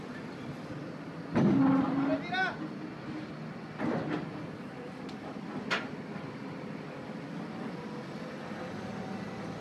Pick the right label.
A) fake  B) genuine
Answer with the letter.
B